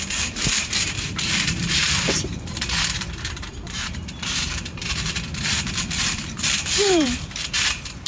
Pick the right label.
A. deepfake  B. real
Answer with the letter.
A